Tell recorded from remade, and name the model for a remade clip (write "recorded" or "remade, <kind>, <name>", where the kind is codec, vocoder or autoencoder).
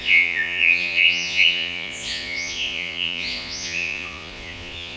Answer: remade, vocoder, Vocos